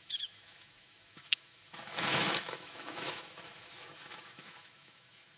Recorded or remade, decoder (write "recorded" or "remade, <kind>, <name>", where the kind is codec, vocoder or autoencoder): remade, autoencoder, DAC-VAE